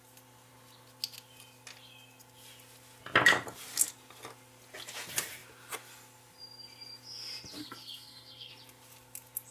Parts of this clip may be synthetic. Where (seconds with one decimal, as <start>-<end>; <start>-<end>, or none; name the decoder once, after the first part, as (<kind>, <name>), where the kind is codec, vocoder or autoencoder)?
7.6-8.5 (codec, SNAC)